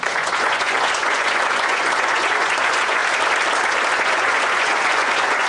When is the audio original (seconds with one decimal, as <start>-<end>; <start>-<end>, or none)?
3.0-3.9